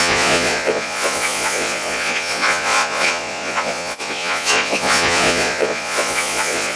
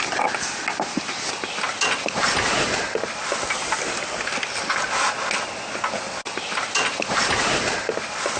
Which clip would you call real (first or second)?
second